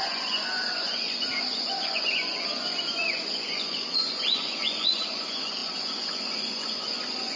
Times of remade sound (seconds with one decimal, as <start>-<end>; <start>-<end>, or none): 0.0-7.4